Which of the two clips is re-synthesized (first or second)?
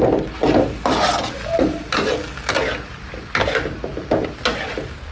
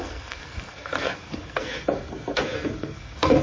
second